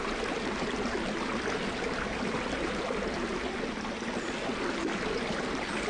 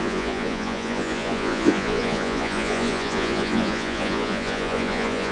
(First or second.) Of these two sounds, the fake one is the second